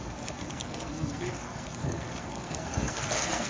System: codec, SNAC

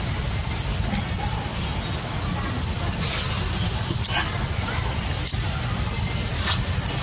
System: none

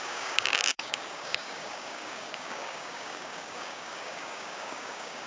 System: codec, DAC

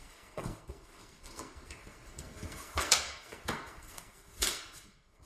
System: codec, SNAC